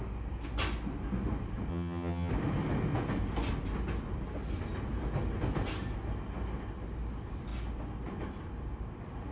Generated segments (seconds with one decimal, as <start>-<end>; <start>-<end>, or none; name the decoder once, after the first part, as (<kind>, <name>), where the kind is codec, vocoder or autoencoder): 1.7-2.3 (vocoder, HiFi-GAN)